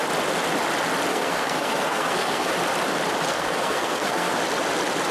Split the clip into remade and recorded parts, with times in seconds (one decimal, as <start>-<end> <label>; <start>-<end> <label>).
0.0-1.1 recorded; 1.1-2.5 remade; 2.5-3.3 recorded; 3.3-4.4 remade; 4.4-5.1 recorded